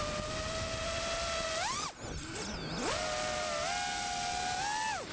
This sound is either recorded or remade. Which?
recorded